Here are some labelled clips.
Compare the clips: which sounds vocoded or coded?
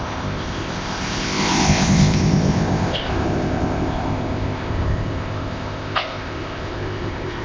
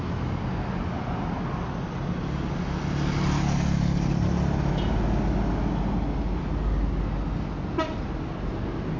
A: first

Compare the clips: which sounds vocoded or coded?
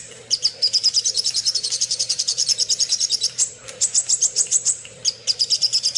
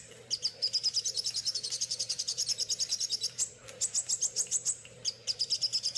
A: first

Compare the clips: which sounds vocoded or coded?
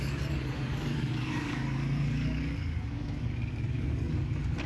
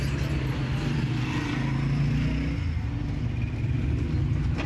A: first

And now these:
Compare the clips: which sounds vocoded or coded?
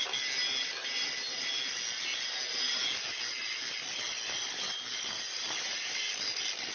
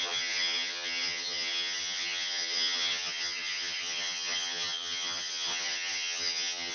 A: second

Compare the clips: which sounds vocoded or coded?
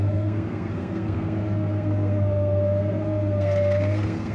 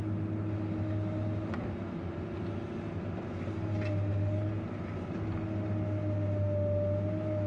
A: first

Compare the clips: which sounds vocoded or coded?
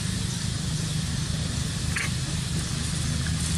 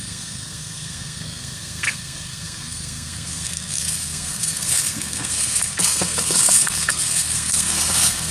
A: second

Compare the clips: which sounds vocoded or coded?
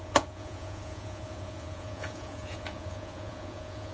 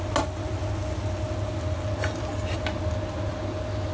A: first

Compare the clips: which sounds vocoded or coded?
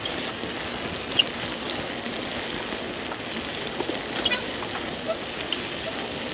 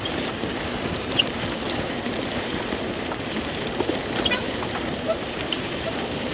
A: second